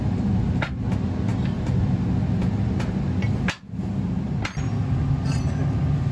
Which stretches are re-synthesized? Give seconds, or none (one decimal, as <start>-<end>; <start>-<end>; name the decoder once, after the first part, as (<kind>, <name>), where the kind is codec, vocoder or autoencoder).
none